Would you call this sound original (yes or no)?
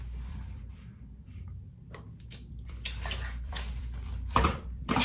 no